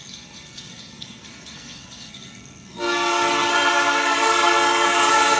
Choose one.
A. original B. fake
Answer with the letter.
B